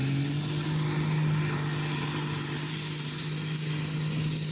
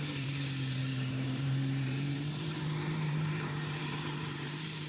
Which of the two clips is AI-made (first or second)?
second